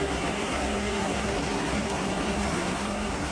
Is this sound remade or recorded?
remade